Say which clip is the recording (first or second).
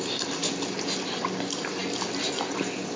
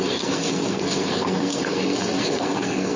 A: first